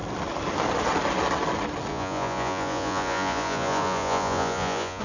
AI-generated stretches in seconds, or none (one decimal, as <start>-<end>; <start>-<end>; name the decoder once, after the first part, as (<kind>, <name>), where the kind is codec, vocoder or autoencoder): 1.9-5.0 (vocoder, Vocos)